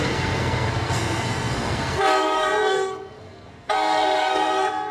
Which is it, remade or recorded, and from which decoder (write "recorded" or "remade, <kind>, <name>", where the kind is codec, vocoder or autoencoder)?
remade, codec, SNAC